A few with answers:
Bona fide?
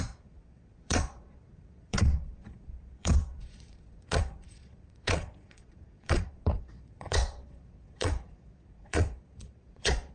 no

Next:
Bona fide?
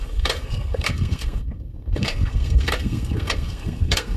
no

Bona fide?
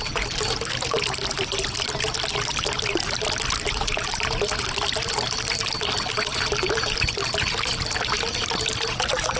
yes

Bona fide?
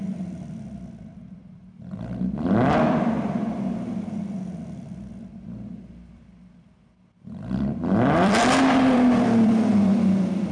no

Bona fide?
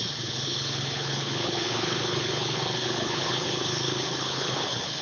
no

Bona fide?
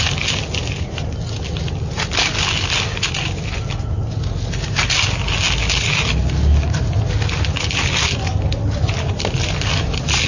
yes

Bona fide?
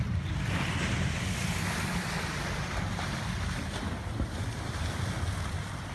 yes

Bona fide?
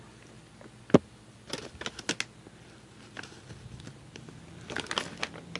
yes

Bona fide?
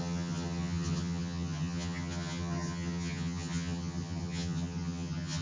no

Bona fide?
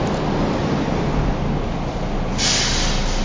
yes